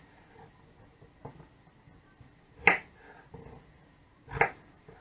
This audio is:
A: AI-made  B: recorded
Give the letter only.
B